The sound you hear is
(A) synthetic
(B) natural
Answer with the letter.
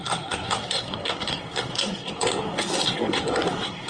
A